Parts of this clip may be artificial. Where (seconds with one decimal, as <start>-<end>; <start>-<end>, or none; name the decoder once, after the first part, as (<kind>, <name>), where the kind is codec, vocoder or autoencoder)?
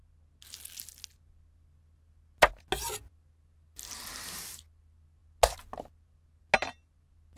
none